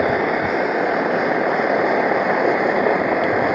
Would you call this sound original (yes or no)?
yes